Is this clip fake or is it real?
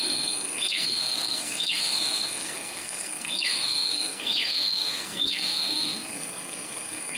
fake